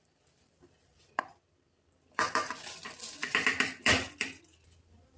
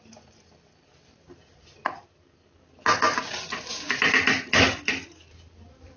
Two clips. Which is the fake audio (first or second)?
first